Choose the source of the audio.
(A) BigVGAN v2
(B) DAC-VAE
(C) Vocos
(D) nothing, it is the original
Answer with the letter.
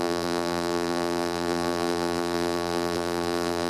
A